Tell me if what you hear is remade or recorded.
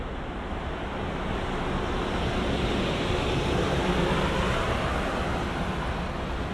recorded